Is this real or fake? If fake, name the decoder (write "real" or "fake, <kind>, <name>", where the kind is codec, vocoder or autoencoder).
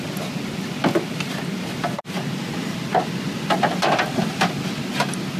real